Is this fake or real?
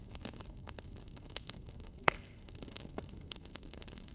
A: fake